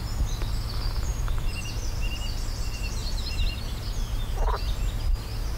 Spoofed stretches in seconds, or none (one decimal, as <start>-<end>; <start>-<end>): 1.1-1.8; 3.0-3.9